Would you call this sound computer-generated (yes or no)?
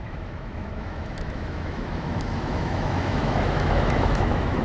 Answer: yes